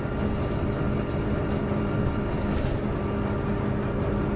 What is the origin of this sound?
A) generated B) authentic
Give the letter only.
B